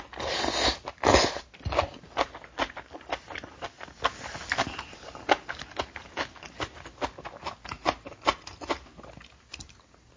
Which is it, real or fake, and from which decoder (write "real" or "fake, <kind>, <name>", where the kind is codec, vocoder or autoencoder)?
real